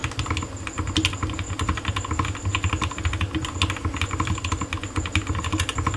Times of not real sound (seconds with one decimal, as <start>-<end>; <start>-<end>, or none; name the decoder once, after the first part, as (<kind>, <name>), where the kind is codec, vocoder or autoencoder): none